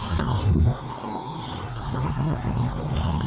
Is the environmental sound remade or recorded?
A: remade